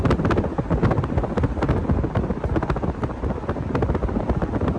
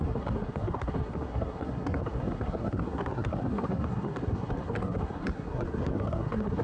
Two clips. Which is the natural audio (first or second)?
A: first